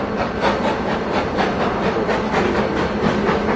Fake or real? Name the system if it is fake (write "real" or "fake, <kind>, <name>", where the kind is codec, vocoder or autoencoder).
real